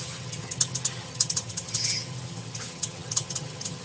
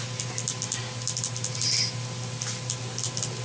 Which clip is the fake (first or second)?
first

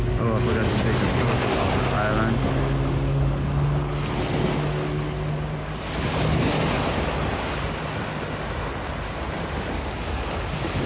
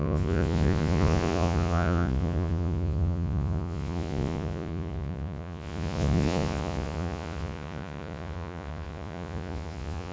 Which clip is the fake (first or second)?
second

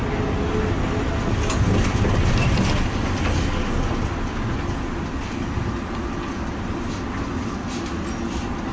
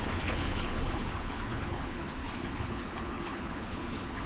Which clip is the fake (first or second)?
second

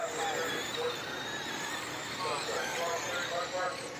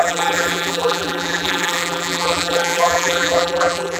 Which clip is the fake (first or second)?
second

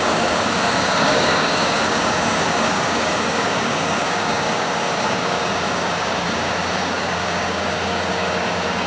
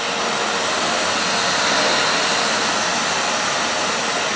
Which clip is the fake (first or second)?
first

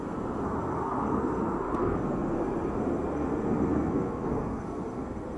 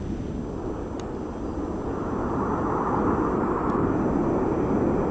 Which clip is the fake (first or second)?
first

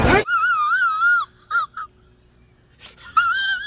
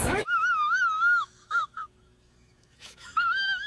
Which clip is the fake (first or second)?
second